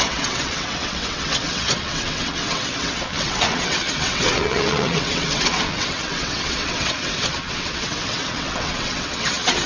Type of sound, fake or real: fake